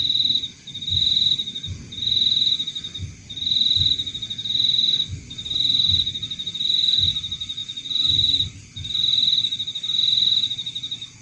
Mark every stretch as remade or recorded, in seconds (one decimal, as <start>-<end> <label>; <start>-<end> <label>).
0.0-7.6 recorded; 7.6-8.5 remade; 8.5-11.2 recorded